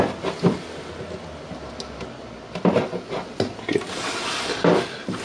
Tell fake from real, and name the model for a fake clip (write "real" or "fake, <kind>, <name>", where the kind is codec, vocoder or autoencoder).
real